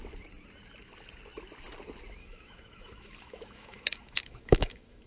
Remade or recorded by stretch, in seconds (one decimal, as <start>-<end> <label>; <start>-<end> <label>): 0.0-2.2 recorded; 2.2-5.1 remade